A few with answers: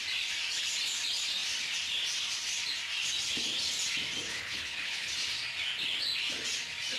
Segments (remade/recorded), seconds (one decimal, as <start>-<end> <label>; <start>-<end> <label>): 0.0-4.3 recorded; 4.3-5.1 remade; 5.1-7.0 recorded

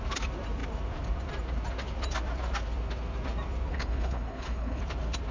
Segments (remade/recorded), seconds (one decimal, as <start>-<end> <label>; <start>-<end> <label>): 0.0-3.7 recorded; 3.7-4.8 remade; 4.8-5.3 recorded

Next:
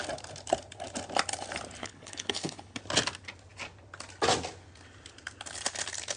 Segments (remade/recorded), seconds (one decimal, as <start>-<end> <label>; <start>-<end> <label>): 0.0-1.8 recorded; 1.8-2.8 remade; 2.8-6.2 recorded

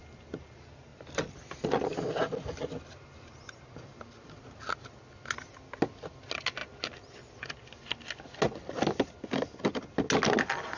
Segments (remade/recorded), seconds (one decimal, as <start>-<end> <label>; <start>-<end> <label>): 0.0-10.8 recorded